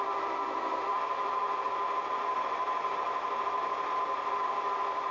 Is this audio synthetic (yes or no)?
no